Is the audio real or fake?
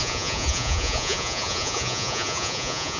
fake